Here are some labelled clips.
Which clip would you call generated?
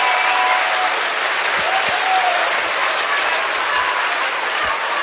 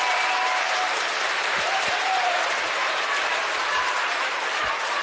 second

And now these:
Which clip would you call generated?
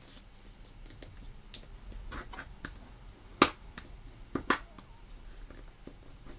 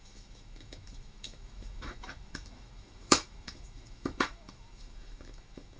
second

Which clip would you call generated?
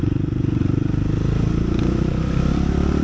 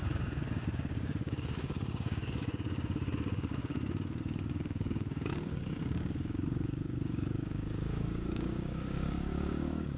second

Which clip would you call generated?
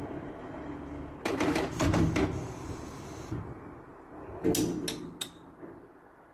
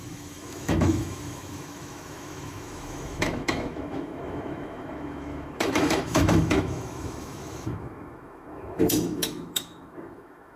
second